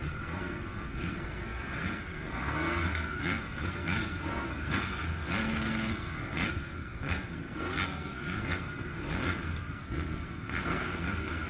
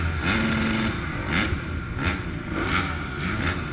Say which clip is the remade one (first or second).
first